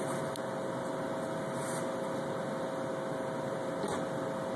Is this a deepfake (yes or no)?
no